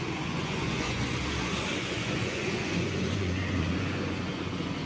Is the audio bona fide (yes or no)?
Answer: no